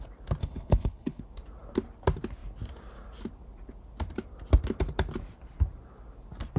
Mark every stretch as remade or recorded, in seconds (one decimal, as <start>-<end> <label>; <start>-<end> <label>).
0.0-0.4 recorded; 0.4-1.2 remade; 1.2-6.6 recorded